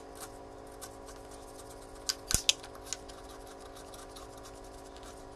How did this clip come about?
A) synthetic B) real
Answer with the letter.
B